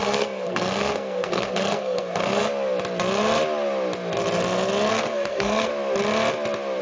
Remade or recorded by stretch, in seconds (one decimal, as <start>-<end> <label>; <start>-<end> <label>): 0.0-2.4 remade; 2.4-4.9 recorded; 4.9-5.7 remade; 5.7-6.8 recorded